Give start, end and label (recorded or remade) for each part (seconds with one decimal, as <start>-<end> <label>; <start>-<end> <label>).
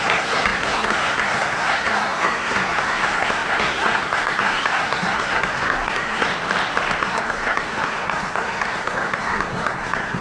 0.0-6.3 remade; 6.3-7.0 recorded; 7.0-10.2 remade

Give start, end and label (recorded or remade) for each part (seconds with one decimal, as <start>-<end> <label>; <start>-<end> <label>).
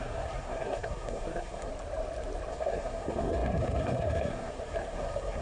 0.0-1.7 remade; 1.7-2.5 recorded; 2.5-5.4 remade